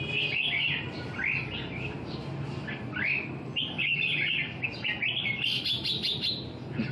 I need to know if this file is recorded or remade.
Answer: recorded